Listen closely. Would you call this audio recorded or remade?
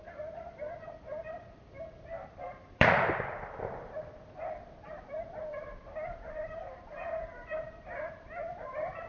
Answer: remade